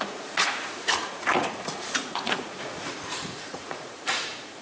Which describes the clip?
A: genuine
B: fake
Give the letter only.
B